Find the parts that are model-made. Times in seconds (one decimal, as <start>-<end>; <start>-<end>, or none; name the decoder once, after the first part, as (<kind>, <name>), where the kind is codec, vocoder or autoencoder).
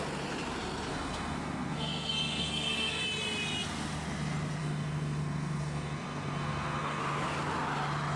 0.9-3.0 (codec, SNAC); 4.6-7.0